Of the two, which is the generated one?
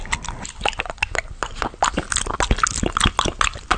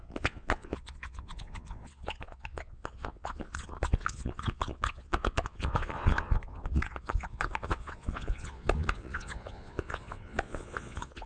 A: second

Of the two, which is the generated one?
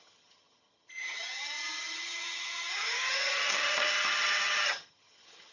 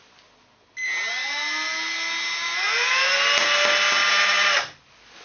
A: first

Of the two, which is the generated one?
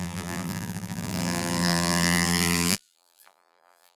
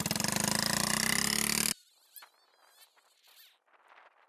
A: first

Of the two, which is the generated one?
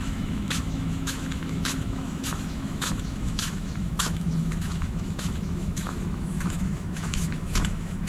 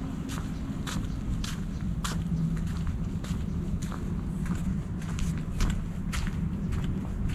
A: first